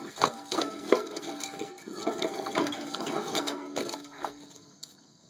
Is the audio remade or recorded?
remade